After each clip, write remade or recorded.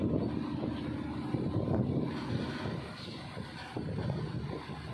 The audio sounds recorded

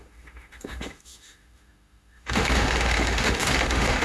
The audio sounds remade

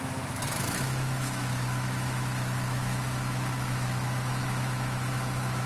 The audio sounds remade